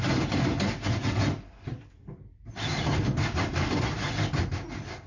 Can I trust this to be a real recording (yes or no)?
yes